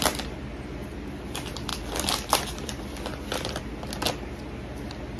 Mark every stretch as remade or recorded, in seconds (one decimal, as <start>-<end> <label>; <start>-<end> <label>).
0.0-5.2 recorded